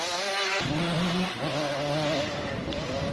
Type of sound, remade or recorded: recorded